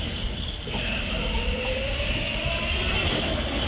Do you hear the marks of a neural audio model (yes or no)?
no